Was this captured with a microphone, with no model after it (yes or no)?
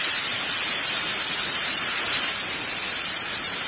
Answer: no